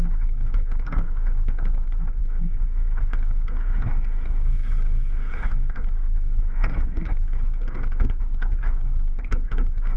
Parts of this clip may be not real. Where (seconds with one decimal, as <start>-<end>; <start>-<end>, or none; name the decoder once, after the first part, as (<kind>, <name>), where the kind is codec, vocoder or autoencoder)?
0.0-10.0 (codec, SNAC)